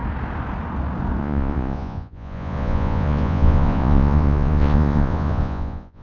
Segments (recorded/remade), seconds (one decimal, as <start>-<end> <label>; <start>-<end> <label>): 0.0-1.2 recorded; 1.2-6.0 remade